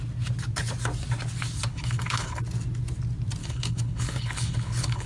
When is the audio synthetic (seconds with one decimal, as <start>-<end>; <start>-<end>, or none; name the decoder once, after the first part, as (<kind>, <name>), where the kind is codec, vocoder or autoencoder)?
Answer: 1.7-2.4 (codec, HILCodec); 3.4-5.1